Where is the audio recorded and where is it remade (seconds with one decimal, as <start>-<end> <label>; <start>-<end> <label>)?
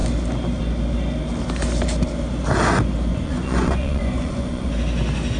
0.0-3.1 recorded; 3.1-4.7 remade; 4.7-5.4 recorded